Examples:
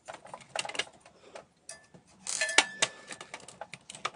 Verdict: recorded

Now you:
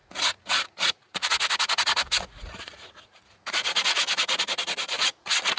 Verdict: remade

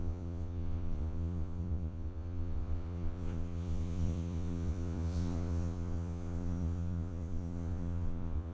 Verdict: remade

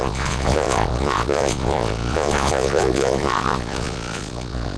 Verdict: remade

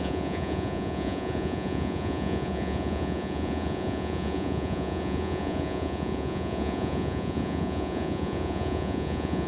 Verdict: remade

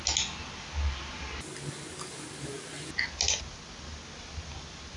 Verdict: recorded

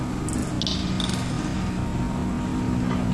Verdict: recorded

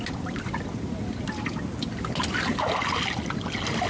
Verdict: recorded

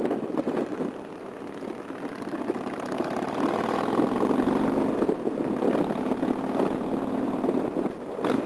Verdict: recorded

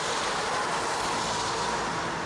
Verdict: recorded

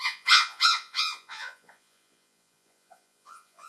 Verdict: remade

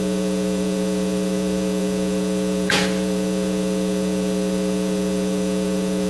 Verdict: remade